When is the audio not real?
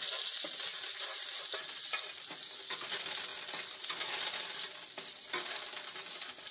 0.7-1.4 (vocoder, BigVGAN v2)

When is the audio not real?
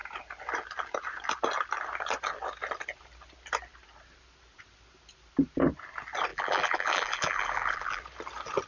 6.3-8.0 (vocoder, BigVGAN v2)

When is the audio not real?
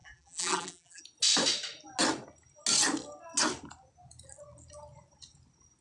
0.0-1.0 (vocoder, BigVGAN v2)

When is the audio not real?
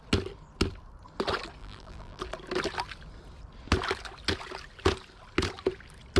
1.6-2.2 (vocoder, BigVGAN v2)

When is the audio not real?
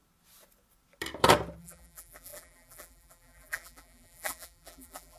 1.6-5.2 (vocoder, BigVGAN v2)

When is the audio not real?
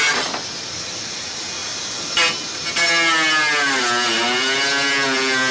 none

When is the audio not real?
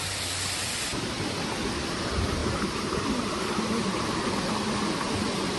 none